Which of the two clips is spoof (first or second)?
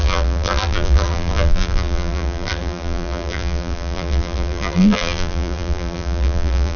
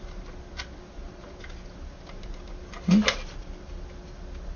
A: first